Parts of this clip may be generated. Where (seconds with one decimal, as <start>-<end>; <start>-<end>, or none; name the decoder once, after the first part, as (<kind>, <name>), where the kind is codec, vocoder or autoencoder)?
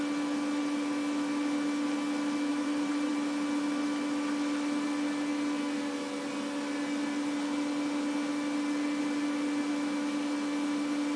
2.5-3.1 (vocoder, BigVGAN v2)